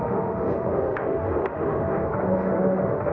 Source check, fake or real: fake